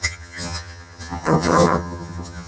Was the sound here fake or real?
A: fake